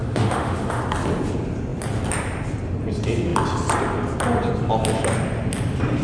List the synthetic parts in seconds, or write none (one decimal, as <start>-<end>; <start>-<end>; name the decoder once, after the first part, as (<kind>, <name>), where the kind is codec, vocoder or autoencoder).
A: 0.0-0.8 (autoencoder, DAC-VAE)